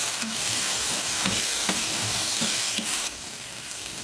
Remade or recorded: remade